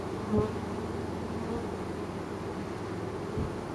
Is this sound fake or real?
real